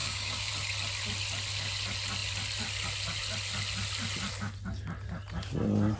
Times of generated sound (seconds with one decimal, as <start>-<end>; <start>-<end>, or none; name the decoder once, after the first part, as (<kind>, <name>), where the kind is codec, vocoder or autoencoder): 0.0-0.5 (codec, DAC)

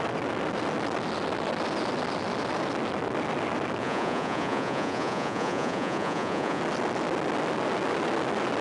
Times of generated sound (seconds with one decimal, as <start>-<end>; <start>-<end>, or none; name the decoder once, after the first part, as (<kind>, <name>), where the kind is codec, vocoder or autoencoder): 3.8-6.6 (vocoder, Vocos)

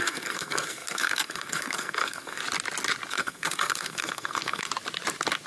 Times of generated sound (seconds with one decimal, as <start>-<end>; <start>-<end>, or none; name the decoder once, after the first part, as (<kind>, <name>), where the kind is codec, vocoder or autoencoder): 0.0-2.4 (codec, SNAC); 3.1-4.7

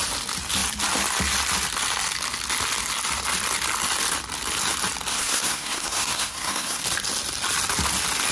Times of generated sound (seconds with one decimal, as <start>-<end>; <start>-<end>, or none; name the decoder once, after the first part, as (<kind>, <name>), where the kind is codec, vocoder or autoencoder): 5.1-6.8 (codec, SNAC)

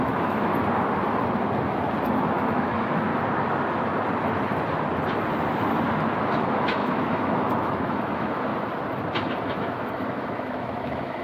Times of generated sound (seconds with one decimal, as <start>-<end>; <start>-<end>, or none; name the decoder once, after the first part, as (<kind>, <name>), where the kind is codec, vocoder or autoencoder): 0.0-0.5 (autoencoder, DAC-VAE); 2.3-3.1; 6.3-8.5; 9.4-11.2

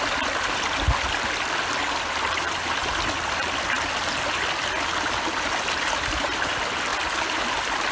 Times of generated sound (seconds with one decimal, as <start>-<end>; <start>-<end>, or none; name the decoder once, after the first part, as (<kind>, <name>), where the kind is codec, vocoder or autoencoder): none

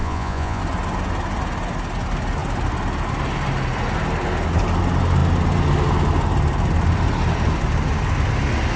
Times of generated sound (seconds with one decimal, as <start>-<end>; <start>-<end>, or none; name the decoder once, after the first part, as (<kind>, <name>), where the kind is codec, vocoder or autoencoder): 0.0-0.6 (vocoder, Vocos)